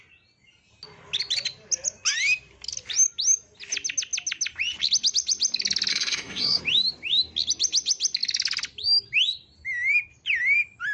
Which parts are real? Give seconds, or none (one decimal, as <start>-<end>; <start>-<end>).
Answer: 0.0-5.9; 6.6-10.9